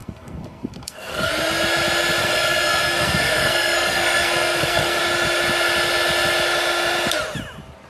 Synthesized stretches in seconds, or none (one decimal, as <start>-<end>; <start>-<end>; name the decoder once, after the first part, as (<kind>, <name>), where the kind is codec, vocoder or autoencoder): 0.0-1.3 (codec, SNAC); 2.2-5.0